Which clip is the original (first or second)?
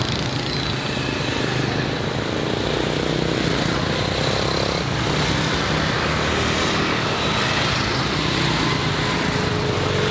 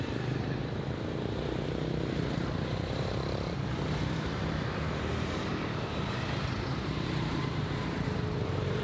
first